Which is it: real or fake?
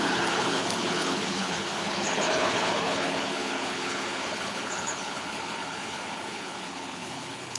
fake